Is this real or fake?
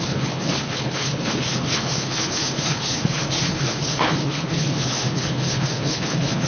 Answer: fake